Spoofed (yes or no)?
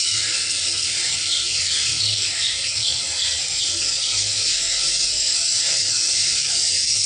yes